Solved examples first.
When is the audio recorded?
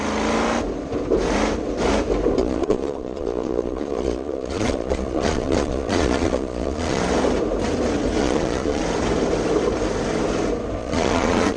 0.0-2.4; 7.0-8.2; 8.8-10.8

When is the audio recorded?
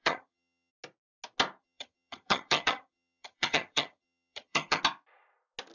0.7-1.6; 4.8-5.7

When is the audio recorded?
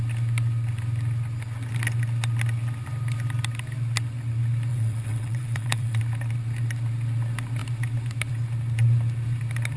0.0-4.7; 6.0-9.8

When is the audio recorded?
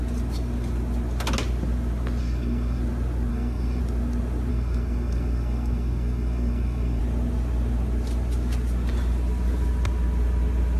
0.0-2.2; 2.8-3.3; 3.8-4.5; 7.0-10.8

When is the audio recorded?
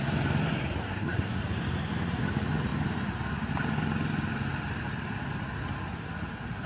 0.0-0.8; 1.4-6.7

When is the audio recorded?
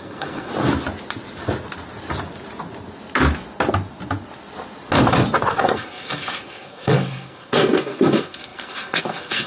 0.5-5.5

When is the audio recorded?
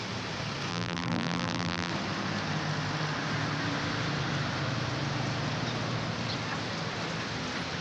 0.0-0.7; 1.9-7.8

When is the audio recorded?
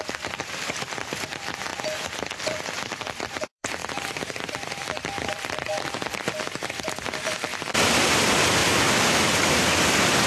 none